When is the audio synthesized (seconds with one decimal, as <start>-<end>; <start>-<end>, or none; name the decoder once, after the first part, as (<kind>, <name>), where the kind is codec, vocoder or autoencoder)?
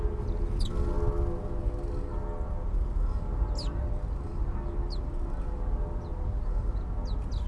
none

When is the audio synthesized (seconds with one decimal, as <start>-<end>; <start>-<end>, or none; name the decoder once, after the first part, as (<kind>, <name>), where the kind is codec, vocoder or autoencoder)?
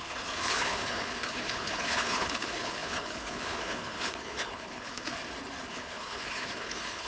0.0-5.2 (codec, HILCodec); 5.7-7.1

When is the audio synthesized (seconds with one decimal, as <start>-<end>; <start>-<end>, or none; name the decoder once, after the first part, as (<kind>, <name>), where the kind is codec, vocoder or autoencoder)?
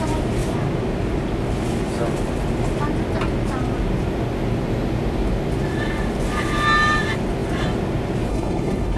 8.3-9.0 (codec, HILCodec)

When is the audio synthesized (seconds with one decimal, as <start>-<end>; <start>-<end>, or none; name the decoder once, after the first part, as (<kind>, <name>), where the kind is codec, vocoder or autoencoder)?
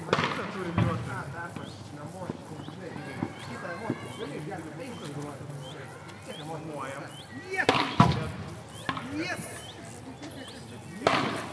none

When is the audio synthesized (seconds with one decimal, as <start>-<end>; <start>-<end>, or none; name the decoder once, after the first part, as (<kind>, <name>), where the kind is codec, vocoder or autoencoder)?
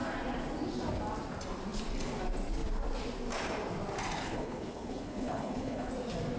4.2-5.9 (codec, HILCodec)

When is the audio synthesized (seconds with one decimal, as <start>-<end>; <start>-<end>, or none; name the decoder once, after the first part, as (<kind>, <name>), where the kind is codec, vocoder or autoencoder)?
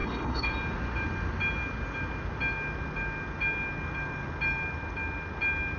0.0-0.5 (codec, HILCodec)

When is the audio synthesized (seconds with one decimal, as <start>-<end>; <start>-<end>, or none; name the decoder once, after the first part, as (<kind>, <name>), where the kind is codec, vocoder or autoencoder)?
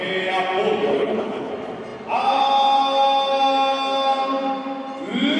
0.9-1.5 (codec, HILCodec)